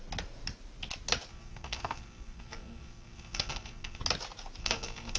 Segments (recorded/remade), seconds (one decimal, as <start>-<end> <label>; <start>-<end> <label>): 0.0-1.3 recorded; 1.3-4.0 remade; 4.0-4.6 recorded; 4.6-5.2 remade